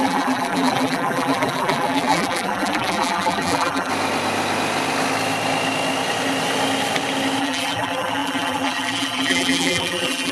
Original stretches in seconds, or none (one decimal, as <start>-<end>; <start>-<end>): 3.9-7.4